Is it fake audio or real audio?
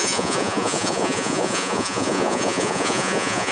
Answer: fake